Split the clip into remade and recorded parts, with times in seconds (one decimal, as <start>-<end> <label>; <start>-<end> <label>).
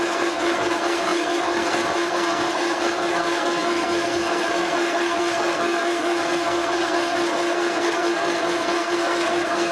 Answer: 0.0-9.7 remade